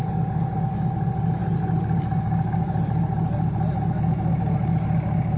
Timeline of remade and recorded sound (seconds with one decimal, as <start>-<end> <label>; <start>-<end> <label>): 0.0-5.4 recorded